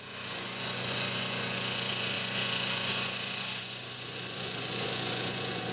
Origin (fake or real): fake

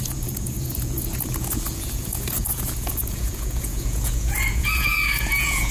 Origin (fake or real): fake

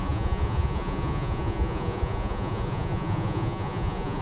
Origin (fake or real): fake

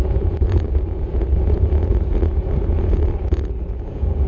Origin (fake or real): fake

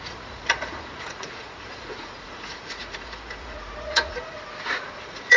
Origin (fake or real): fake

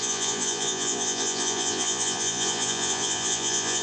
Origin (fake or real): fake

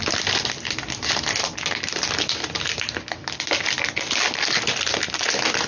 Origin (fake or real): real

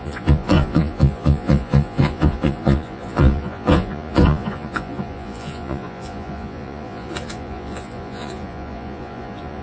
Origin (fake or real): fake